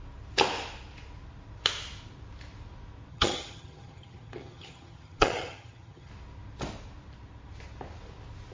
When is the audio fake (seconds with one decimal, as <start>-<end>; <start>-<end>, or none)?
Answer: 3.1-6.1